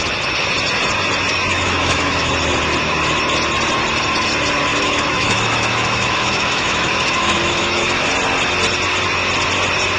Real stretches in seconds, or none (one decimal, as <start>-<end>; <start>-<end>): 0.0-1.5; 2.3-4.7; 8.1-10.0